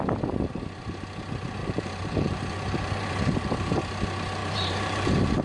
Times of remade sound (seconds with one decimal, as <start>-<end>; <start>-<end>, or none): 1.6-3.8; 4.4-5.4